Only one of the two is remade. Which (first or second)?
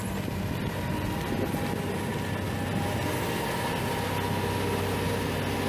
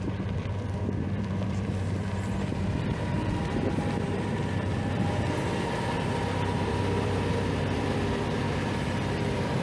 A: second